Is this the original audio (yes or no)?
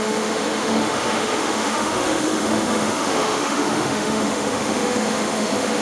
no